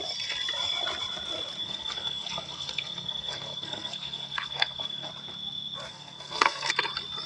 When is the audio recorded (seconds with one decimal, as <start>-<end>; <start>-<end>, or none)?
0.0-1.6; 5.1-5.9; 6.7-7.3